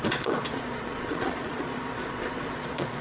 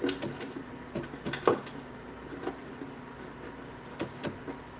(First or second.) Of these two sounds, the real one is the second